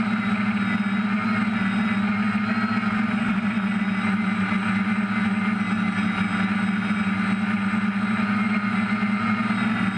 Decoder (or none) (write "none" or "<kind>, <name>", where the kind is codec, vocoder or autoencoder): none